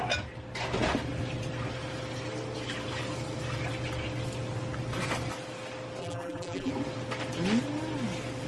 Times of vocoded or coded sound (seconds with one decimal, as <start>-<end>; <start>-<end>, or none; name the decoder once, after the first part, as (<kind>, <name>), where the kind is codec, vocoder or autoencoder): 6.0-6.7 (vocoder, BigVGAN v2)